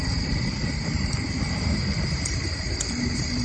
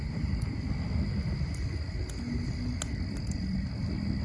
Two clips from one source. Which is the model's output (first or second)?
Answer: first